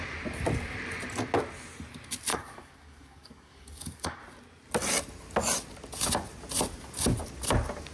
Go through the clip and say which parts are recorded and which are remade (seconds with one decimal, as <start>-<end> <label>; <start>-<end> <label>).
0.0-2.3 recorded; 2.3-4.2 remade; 4.2-7.9 recorded